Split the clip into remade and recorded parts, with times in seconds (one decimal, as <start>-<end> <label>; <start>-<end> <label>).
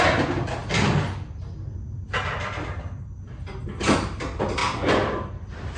0.0-5.8 recorded